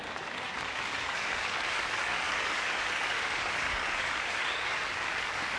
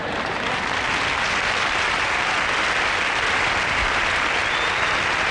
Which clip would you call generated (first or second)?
first